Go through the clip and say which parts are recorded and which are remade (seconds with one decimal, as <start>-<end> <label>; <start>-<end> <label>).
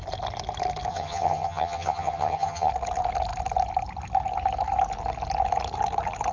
0.0-0.9 recorded; 0.9-2.7 remade; 2.7-6.3 recorded